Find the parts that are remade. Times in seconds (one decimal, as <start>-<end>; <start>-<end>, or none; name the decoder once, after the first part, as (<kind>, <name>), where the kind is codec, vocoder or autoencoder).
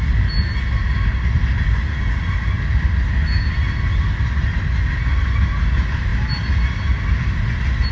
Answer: none